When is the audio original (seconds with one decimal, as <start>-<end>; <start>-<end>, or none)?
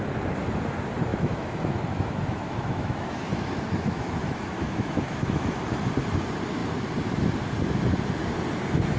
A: 0.0-1.1; 5.6-9.0